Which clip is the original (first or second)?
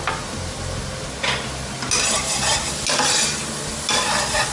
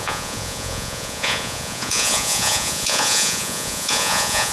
first